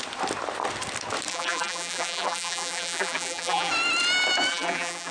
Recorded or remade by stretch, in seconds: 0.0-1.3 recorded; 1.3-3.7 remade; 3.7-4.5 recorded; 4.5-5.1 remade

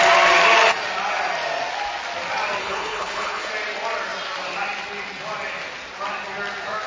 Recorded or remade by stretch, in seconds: 0.0-2.6 recorded; 2.6-3.5 remade; 3.5-6.9 recorded

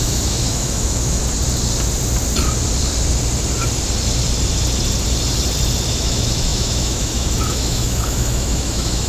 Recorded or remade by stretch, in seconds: 0.0-1.2 remade; 1.2-5.9 recorded; 5.9-9.1 remade

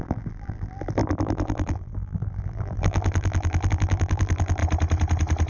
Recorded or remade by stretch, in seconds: 0.0-4.6 remade; 4.6-5.5 recorded

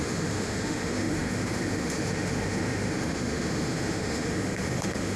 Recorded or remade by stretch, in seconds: 0.0-5.2 remade

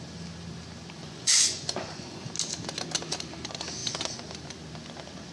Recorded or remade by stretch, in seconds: 0.0-1.0 recorded; 1.0-2.2 remade; 2.2-5.3 recorded

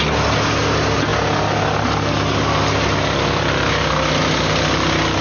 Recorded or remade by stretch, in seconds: 0.0-5.2 recorded

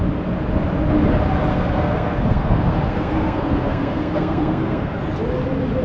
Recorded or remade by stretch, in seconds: 0.0-1.5 recorded; 1.5-5.0 remade; 5.0-5.8 recorded